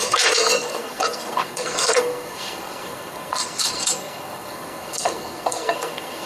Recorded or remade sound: remade